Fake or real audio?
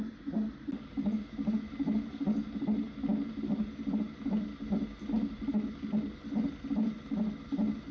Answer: real